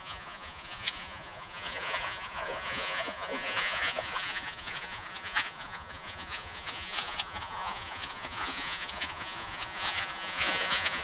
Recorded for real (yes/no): no